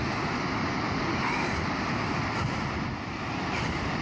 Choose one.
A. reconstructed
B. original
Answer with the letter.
B